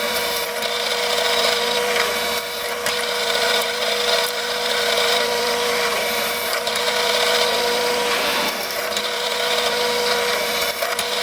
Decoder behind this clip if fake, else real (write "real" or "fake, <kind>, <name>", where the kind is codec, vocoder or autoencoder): fake, vocoder, BigVGAN v2